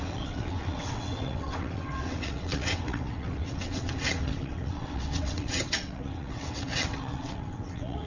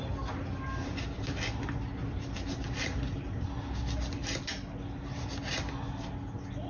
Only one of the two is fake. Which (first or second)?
first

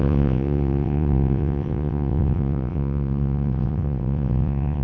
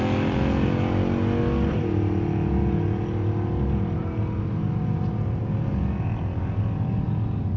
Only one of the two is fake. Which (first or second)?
first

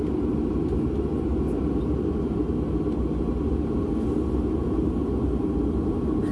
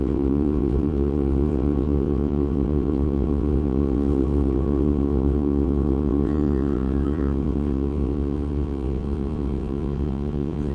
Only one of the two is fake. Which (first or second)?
second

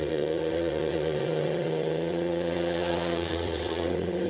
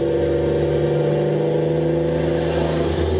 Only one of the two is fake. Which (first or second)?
first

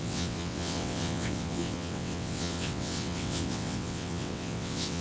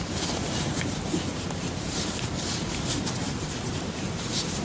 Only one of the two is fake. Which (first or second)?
first